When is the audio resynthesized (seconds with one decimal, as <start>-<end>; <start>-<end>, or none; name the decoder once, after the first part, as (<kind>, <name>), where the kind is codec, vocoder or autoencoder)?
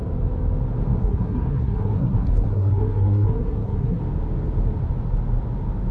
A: 1.0-4.0 (codec, SNAC)